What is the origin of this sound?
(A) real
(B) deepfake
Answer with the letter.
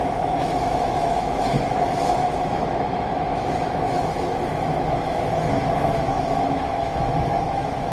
B